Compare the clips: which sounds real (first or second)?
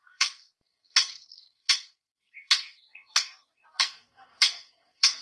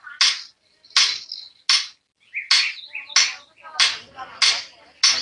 second